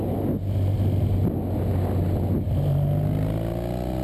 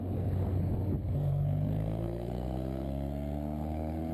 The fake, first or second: second